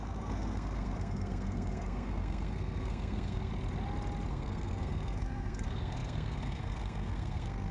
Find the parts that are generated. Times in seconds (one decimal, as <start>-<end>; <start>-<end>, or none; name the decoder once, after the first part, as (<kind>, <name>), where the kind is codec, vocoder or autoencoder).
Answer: 0.0-3.5 (codec, SNAC); 4.3-7.7